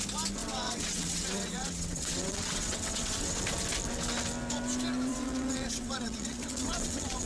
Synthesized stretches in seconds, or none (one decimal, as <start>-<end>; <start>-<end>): 0.4-3.4; 5.1-7.3